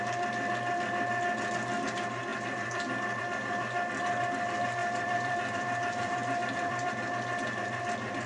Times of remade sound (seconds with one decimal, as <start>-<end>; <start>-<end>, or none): 2.3-3.2; 4.8-6.9

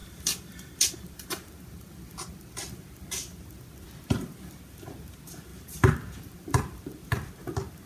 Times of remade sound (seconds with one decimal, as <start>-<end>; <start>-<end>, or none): 0.0-4.6; 5.5-7.3

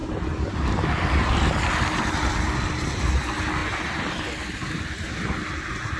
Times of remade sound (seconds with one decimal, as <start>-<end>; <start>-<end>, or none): none

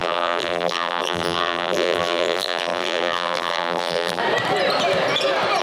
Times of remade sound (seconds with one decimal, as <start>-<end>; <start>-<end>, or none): 0.0-4.2

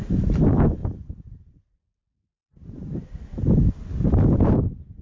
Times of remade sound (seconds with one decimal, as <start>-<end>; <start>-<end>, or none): 0.8-3.8

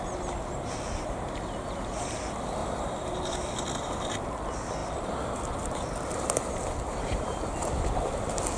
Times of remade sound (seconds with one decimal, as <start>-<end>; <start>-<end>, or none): 2.6-3.5

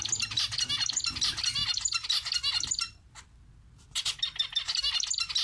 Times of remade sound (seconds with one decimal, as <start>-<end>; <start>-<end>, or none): none